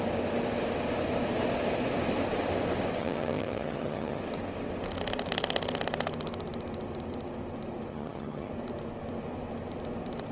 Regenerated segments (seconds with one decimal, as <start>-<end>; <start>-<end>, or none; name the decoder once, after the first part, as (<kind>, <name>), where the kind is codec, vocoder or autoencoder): 3.0-4.2 (vocoder, HiFi-GAN); 7.9-8.5